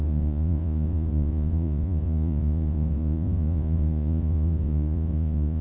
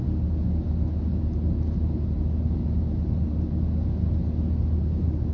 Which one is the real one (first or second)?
second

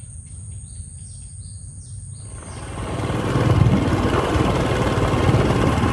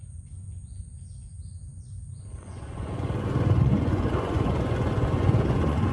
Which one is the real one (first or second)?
first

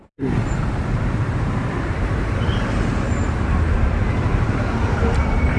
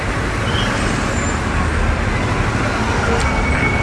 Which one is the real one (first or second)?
second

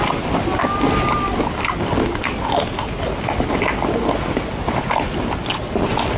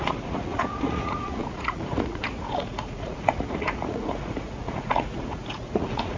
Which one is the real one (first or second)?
first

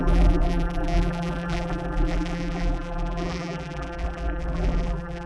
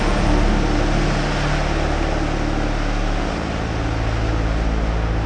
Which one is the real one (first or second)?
second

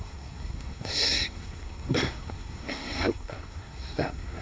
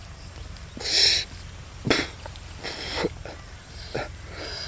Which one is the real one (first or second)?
second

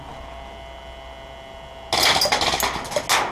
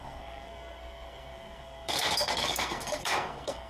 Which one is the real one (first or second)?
first